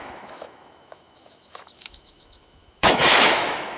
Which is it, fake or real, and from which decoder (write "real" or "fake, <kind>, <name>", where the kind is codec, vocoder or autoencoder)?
fake, autoencoder, DAC-VAE